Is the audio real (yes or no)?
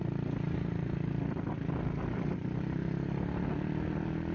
yes